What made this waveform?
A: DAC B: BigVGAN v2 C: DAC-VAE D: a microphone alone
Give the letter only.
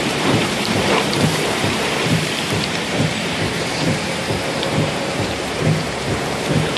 B